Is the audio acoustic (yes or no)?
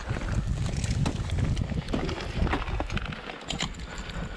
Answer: yes